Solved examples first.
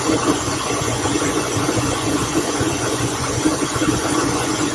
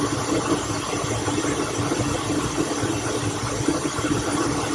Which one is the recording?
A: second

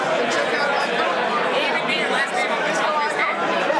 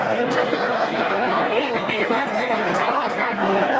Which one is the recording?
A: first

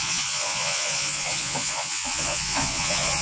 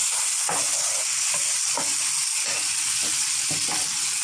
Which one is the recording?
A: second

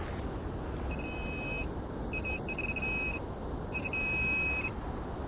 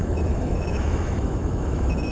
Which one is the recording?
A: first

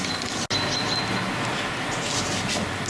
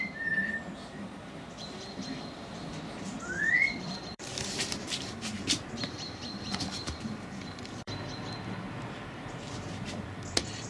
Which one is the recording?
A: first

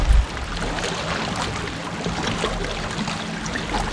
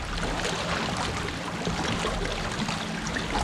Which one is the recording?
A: first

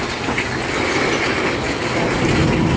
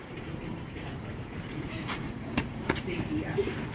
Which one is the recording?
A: first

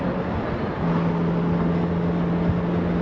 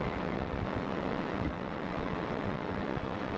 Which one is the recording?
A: first